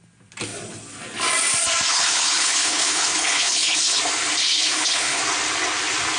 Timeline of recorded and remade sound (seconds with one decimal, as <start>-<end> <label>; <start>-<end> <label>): 0.0-1.9 recorded; 1.9-4.0 remade; 4.0-4.4 recorded; 4.4-5.2 remade; 5.2-6.2 recorded